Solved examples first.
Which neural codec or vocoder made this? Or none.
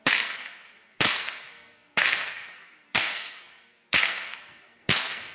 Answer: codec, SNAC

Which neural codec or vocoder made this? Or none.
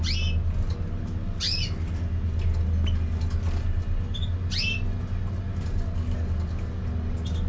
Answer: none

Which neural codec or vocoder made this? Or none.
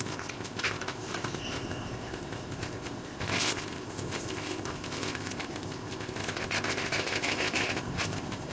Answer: codec, ZipCodec